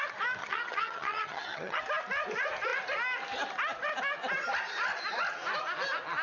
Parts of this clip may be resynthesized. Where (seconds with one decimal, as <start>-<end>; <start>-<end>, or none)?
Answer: 0.4-1.8